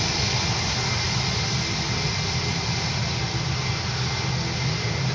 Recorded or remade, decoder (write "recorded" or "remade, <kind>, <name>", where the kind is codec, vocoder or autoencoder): recorded